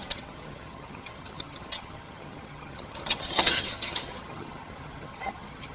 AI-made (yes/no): yes